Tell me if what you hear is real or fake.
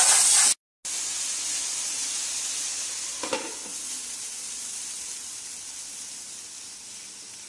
real